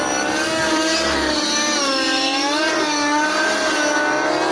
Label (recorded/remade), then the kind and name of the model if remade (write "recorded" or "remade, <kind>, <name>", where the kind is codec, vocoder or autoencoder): recorded